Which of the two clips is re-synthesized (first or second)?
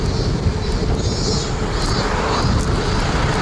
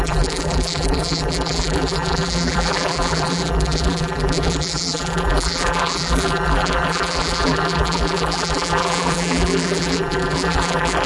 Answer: second